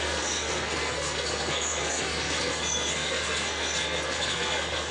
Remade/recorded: remade